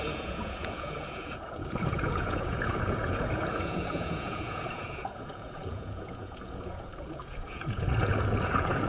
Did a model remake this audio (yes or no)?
yes